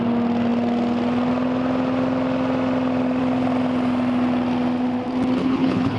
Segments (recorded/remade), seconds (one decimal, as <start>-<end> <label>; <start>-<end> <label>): 0.0-5.4 recorded; 5.4-6.0 remade